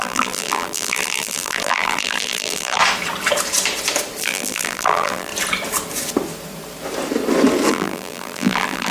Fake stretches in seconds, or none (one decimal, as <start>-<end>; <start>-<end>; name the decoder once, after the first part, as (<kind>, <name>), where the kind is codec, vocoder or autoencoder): 0.0-2.8 (vocoder, BigVGAN v2); 4.2-5.3; 7.7-8.9